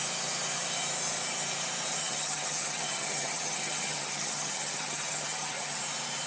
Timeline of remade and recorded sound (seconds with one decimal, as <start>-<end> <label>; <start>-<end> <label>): 0.0-2.0 recorded; 2.0-5.8 remade; 5.8-6.3 recorded